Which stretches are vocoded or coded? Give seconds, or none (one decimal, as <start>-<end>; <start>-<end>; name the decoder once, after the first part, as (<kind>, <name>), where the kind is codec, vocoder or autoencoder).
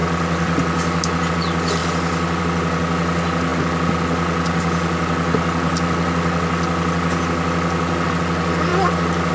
none